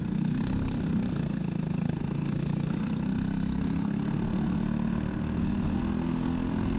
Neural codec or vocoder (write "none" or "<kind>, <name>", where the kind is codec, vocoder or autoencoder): codec, SNAC